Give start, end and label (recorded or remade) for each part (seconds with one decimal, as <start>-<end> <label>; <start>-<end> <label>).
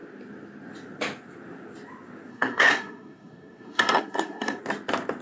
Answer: 0.0-2.3 recorded; 2.3-4.6 remade; 4.6-5.2 recorded